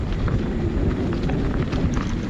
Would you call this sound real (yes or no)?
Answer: no